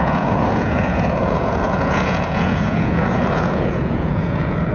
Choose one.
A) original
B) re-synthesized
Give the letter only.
B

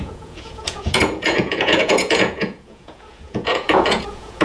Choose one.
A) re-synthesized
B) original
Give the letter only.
A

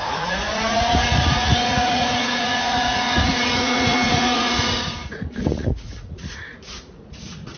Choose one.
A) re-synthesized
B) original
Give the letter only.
A